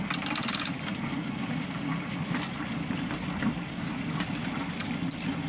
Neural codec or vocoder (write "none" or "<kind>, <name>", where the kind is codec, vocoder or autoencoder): none